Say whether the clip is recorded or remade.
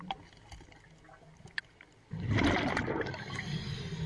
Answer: recorded